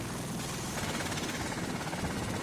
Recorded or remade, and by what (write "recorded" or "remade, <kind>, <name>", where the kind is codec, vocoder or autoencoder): recorded